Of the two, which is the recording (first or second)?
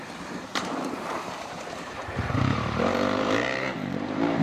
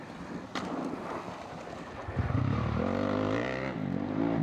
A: second